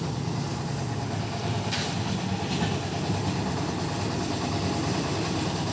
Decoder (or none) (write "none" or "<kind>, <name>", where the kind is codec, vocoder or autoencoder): none